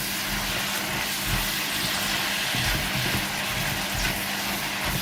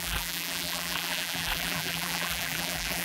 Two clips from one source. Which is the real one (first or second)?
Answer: first